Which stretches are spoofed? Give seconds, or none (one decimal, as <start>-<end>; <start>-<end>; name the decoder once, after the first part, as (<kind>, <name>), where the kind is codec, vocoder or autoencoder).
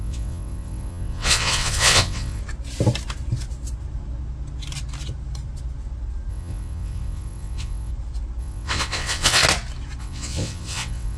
0.0-2.4 (vocoder, WaveNeXt); 6.3-7.9; 8.4-9.4; 10.0-11.2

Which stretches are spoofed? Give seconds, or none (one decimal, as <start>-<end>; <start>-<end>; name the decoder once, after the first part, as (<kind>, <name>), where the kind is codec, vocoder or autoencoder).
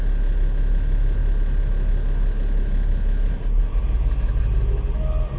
none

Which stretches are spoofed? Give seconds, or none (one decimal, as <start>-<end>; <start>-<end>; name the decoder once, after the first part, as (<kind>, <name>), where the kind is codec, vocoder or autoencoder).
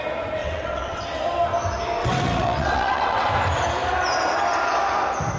0.4-1.0 (vocoder, WaveNeXt); 2.0-3.3